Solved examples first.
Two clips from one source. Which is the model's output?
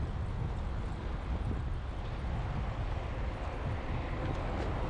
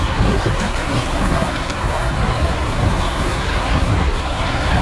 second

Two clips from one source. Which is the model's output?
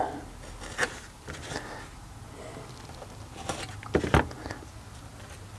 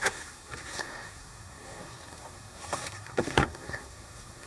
second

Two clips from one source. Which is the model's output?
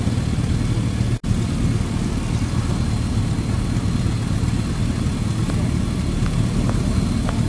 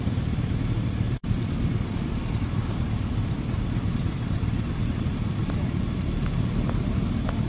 second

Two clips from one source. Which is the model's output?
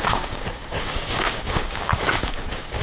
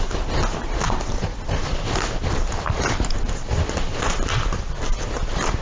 first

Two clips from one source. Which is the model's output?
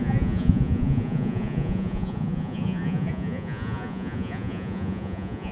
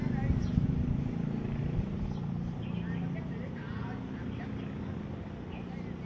first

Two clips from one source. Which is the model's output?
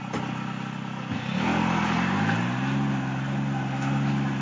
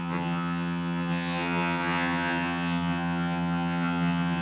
second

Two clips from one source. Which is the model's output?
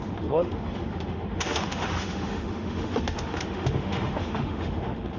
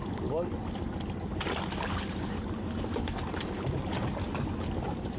first